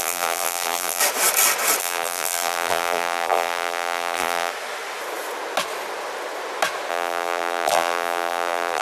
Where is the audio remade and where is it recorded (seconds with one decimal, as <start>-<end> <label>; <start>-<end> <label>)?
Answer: 0.0-1.0 remade; 1.0-1.8 recorded; 1.8-4.5 remade; 4.5-6.9 recorded; 6.9-8.8 remade